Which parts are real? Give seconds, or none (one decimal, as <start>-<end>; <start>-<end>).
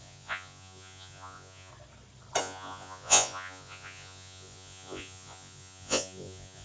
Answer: 1.7-2.4